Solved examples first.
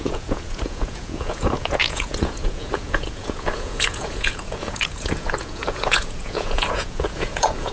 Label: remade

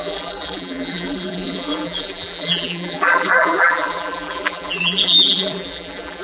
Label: remade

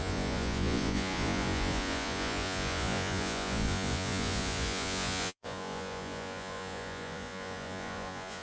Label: remade